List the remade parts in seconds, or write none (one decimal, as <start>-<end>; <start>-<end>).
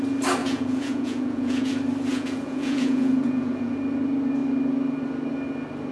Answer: 0.4-1.7; 2.1-3.7